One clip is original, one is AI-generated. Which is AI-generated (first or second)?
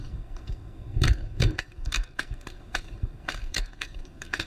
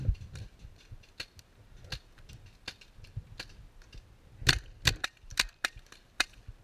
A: first